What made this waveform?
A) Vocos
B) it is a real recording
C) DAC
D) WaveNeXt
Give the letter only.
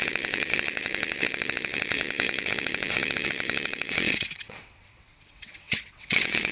D